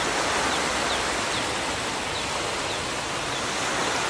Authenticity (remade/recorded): recorded